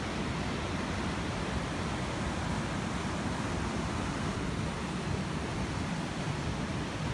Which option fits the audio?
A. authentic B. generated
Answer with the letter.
A